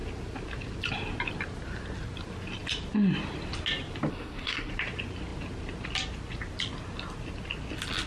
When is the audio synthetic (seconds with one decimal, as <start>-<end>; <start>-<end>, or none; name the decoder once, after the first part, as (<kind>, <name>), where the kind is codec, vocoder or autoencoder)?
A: 4.1-4.7 (codec, SNAC)